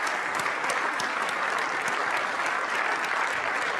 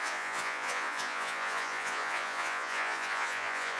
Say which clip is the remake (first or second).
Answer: second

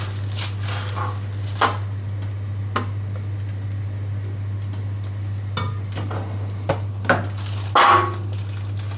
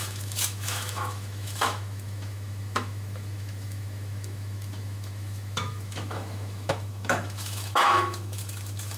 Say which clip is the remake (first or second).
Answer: second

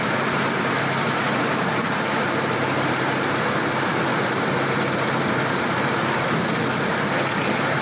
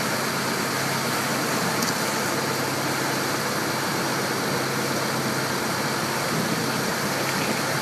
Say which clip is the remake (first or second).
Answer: first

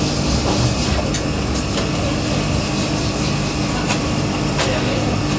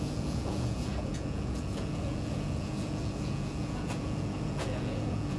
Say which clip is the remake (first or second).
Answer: second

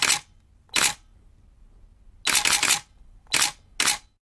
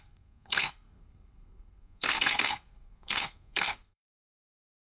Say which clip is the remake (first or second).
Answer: second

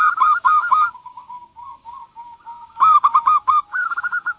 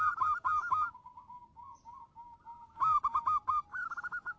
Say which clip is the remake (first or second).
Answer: first